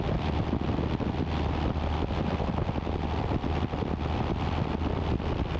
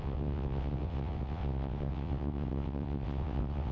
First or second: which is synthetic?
second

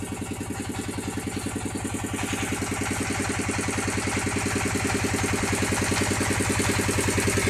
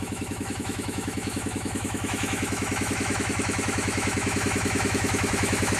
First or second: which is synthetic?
second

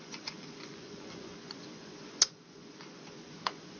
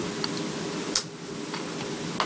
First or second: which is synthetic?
first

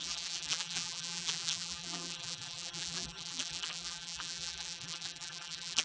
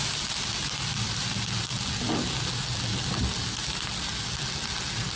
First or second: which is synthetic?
first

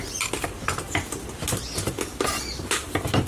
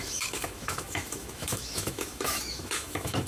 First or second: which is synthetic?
second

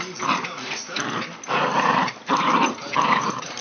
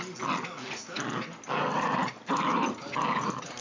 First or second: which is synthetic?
first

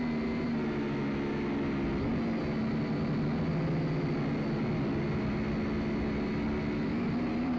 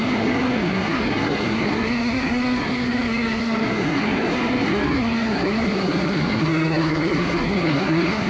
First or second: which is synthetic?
second